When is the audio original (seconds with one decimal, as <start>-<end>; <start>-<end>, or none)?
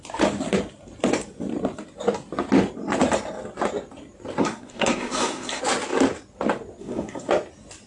0.0-4.4; 5.6-6.8; 7.3-7.9